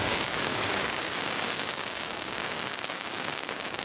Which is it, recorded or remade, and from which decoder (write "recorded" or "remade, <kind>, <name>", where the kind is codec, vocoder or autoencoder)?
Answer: remade, codec, DAC